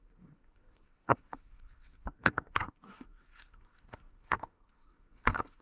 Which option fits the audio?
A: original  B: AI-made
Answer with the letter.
B